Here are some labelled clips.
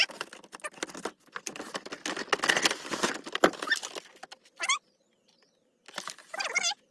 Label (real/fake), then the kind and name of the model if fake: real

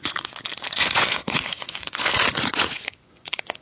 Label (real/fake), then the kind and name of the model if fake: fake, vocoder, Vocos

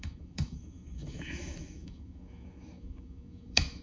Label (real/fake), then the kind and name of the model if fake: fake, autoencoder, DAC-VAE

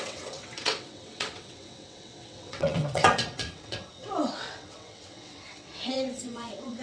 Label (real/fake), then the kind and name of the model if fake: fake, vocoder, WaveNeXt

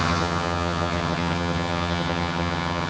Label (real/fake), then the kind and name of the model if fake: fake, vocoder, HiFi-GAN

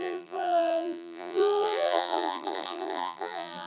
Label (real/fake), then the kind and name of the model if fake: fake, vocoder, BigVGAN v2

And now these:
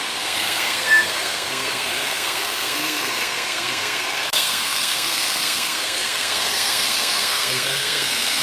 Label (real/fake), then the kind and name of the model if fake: fake, codec, SNAC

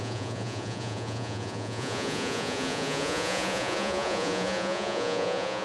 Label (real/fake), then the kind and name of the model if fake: fake, vocoder, Vocos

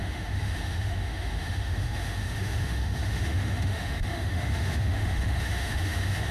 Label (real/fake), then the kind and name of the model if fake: fake, autoencoder, DAC-VAE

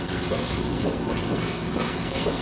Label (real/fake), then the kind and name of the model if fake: fake, codec, SNAC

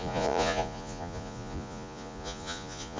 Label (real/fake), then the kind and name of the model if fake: fake, vocoder, Vocos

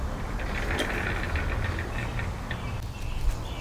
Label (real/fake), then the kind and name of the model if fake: real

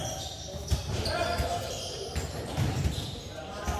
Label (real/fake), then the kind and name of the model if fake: fake, vocoder, BigVGAN v2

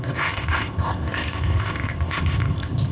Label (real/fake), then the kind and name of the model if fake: fake, codec, ZipCodec